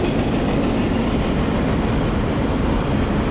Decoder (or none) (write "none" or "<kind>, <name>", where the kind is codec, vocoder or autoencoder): none